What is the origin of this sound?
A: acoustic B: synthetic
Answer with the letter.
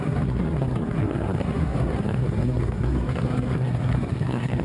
B